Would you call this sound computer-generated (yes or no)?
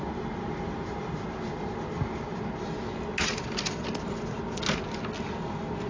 no